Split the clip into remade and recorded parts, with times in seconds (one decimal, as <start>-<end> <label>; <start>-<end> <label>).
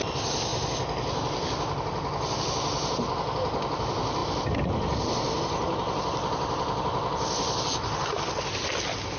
0.0-9.2 recorded